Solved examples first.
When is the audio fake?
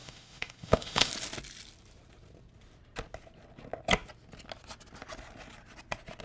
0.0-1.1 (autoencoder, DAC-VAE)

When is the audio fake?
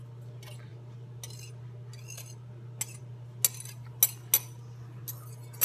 none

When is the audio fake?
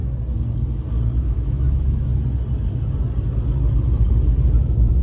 1.2-2.1 (autoencoder, DAC-VAE); 4.6-5.0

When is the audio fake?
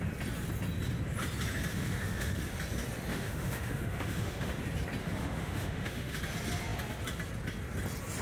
1.7-2.4 (autoencoder, DAC-VAE); 3.1-4.6; 5.0-6.2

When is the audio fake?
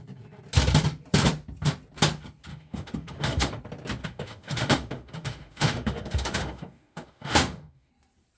2.5-3.5 (autoencoder, DAC-VAE); 4.0-7.9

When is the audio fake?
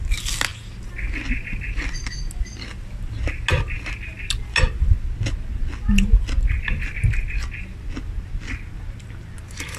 none